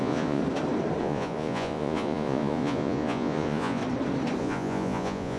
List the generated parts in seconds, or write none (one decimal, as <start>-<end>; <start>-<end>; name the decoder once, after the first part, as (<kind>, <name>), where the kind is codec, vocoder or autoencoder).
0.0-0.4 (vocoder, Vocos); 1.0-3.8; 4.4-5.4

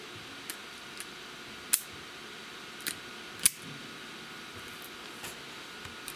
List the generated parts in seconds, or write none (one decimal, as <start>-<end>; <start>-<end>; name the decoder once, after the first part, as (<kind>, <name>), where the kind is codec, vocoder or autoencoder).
none

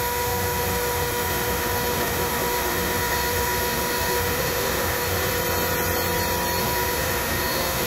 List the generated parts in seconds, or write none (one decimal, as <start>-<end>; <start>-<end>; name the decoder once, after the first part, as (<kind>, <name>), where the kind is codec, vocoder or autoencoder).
0.0-5.3 (autoencoder, DAC-VAE); 6.6-7.9